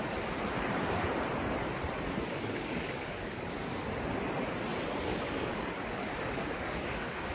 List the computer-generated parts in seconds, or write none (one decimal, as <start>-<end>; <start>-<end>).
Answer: 2.3-3.9; 5.1-7.3